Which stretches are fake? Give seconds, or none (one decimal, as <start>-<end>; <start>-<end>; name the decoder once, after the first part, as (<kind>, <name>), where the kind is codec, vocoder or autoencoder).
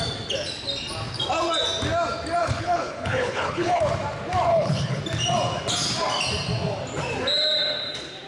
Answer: 2.4-3.8 (codec, HILCodec); 4.5-5.0